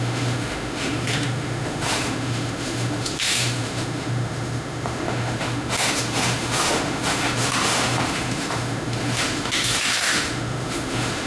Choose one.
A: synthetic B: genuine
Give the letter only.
A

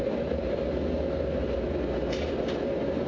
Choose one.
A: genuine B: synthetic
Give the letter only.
A